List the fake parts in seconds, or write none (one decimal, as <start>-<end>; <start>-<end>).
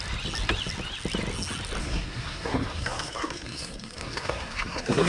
1.8-5.1